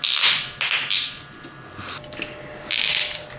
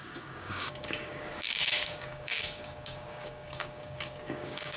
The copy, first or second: second